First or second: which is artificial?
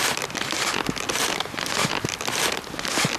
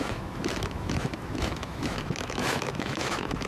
second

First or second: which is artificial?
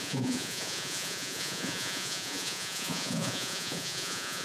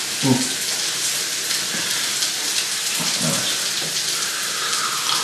first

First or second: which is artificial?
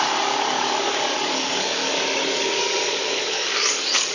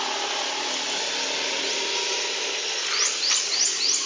first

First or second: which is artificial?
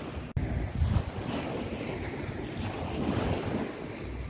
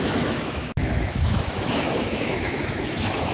second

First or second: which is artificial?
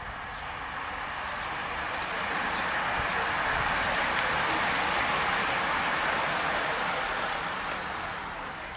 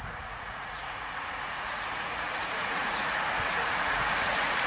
second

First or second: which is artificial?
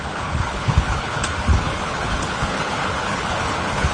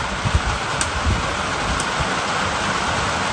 first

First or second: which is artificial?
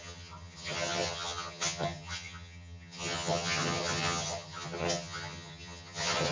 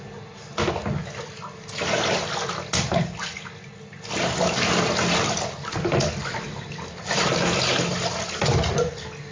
first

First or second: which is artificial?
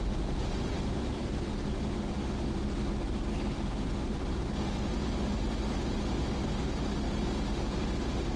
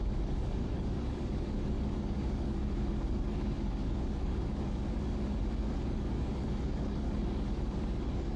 second